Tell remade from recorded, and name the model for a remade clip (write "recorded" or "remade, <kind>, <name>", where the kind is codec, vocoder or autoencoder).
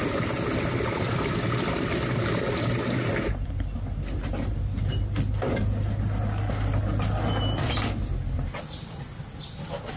recorded